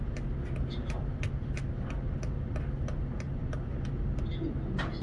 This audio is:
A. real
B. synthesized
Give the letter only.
A